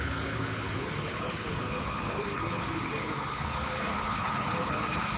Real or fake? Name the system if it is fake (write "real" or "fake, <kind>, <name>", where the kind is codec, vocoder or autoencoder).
fake, codec, HILCodec